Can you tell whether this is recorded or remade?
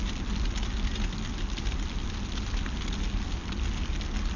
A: recorded